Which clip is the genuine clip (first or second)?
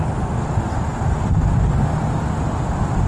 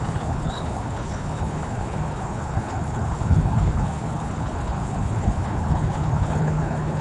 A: first